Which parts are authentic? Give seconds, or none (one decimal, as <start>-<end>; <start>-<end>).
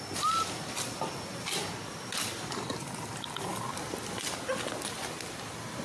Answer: 0.0-5.8